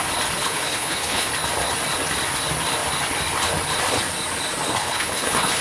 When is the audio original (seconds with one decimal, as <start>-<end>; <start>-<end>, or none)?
0.0-0.4; 1.3-4.8